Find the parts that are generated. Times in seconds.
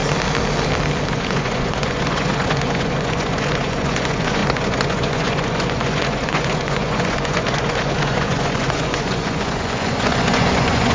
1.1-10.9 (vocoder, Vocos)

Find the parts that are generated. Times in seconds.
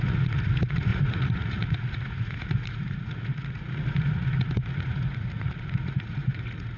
0.0-6.8 (vocoder, Vocos)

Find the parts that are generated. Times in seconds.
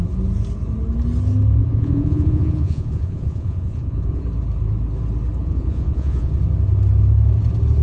1.6-4.2 (vocoder, Vocos); 5.4-6.3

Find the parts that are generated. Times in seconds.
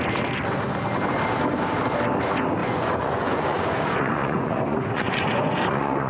2.6-6.1 (vocoder, Vocos)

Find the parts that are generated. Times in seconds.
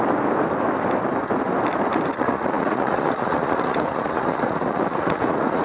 2.1-5.6 (vocoder, Vocos)